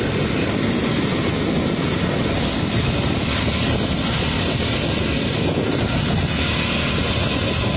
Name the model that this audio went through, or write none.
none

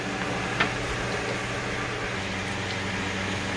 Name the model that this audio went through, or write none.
none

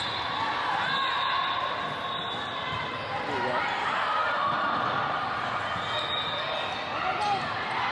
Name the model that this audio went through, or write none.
none